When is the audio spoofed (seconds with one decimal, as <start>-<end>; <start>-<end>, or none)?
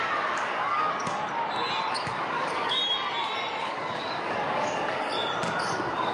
0.0-1.2; 1.9-2.8; 3.6-5.1; 5.6-6.1